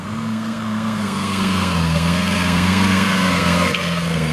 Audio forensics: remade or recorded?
remade